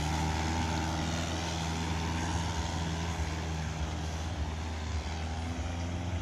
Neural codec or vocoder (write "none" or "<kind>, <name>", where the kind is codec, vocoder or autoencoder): none